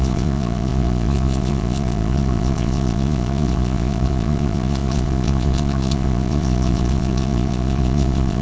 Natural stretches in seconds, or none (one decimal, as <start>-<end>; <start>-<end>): none